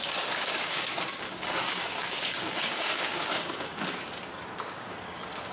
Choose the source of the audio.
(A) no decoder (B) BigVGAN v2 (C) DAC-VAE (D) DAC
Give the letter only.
D